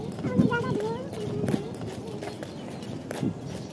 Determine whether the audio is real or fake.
real